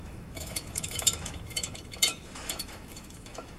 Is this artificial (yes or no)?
yes